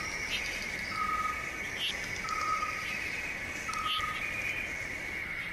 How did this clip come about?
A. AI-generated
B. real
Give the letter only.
B